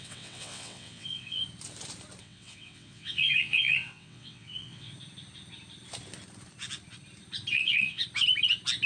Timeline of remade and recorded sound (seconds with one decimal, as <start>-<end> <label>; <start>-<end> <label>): 0.0-1.4 remade; 1.4-2.2 recorded; 2.2-4.9 remade; 4.9-7.5 recorded; 7.5-8.0 remade; 8.0-8.9 recorded